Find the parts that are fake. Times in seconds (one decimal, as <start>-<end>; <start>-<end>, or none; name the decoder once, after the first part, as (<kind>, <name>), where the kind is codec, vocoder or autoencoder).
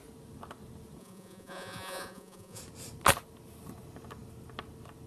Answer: 1.0-2.6 (vocoder, Vocos)